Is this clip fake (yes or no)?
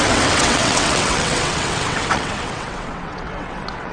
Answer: yes